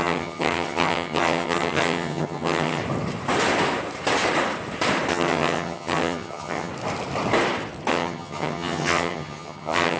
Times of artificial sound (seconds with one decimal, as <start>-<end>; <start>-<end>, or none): 0.0-2.8; 5.1-6.7; 7.9-10.0